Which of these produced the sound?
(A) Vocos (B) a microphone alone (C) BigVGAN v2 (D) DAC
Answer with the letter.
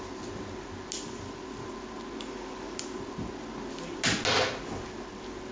B